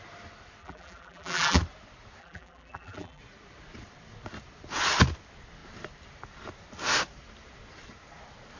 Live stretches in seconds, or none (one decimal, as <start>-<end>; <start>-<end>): 0.0-0.6; 1.6-2.2; 3.2-8.6